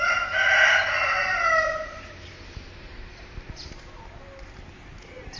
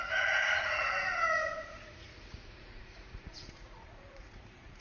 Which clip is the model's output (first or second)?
second